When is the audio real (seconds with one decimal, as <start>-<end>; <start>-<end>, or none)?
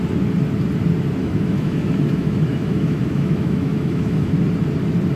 0.0-1.2; 4.3-5.2